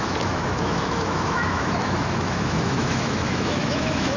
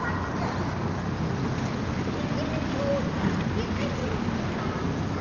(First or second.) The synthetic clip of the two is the first